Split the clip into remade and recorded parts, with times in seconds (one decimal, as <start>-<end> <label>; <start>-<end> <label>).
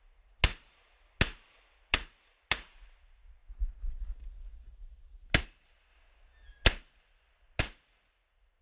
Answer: 0.0-8.6 recorded